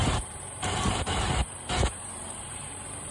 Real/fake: fake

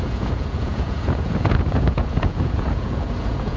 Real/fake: fake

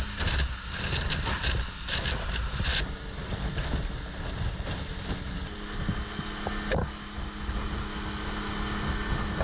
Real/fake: real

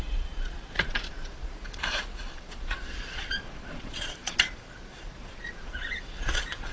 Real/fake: fake